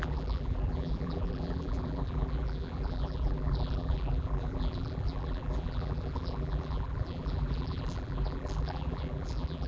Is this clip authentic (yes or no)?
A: no